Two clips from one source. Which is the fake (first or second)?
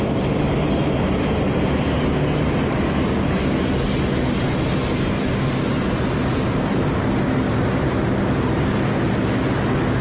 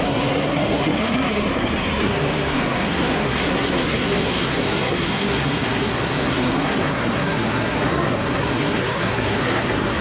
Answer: second